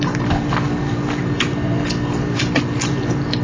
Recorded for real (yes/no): yes